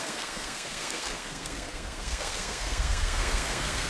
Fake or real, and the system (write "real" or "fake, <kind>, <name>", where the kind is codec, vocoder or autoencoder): fake, codec, SNAC